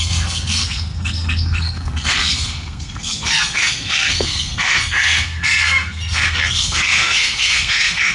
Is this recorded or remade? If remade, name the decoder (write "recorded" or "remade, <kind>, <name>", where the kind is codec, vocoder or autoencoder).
remade, codec, SNAC